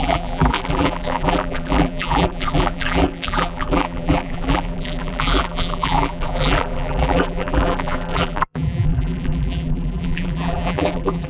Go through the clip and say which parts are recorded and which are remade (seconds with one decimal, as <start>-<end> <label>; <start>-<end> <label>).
0.0-11.3 remade